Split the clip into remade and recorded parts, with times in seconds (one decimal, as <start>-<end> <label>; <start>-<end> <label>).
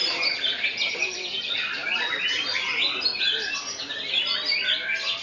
0.0-0.9 recorded; 0.9-1.8 remade; 1.8-5.2 recorded